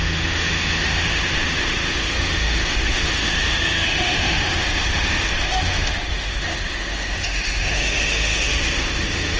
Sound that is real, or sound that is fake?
fake